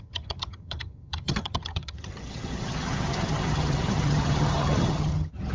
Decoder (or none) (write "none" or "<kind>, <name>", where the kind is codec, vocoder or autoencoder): vocoder, HiFi-GAN